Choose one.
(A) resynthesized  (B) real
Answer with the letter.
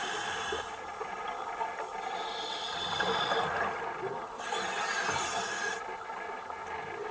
B